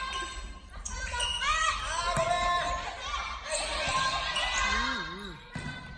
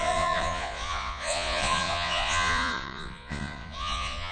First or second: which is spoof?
second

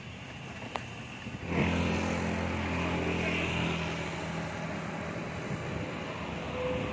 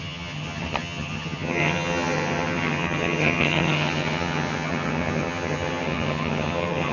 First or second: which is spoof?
second